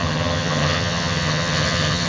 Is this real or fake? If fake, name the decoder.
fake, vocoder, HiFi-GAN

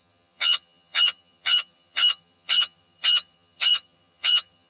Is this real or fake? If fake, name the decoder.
fake, vocoder, HiFi-GAN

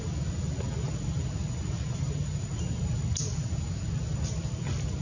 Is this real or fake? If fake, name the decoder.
real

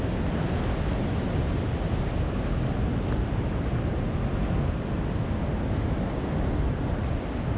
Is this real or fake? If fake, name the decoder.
real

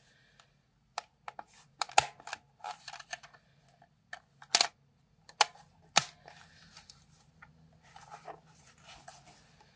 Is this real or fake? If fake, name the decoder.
real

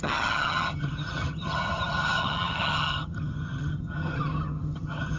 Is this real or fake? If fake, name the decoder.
fake, vocoder, HiFi-GAN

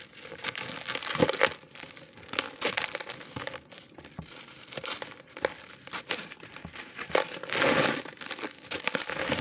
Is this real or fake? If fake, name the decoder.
real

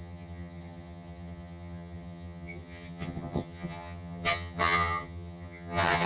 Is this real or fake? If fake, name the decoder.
fake, vocoder, HiFi-GAN